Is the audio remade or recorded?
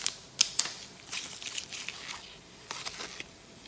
recorded